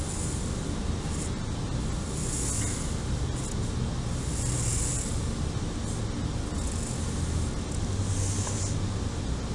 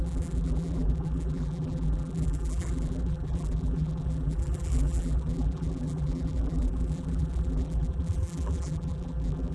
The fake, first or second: second